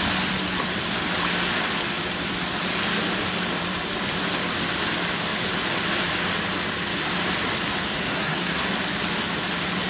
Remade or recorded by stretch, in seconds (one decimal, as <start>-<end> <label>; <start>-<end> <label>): 0.0-8.0 recorded; 8.0-8.7 remade; 8.7-9.9 recorded